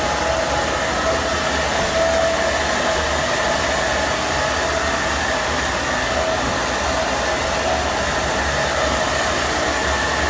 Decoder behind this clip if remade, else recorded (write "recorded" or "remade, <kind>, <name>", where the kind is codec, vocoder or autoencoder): recorded